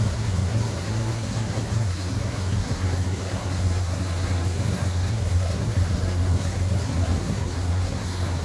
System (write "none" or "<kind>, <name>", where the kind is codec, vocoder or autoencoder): codec, SNAC